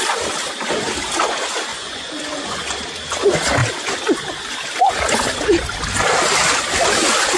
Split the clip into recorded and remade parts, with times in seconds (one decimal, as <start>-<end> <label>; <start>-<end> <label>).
0.0-1.7 recorded; 1.7-2.8 remade; 2.8-7.4 recorded